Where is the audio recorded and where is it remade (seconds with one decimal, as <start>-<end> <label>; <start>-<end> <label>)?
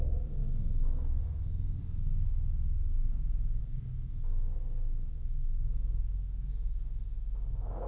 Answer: 0.0-7.9 remade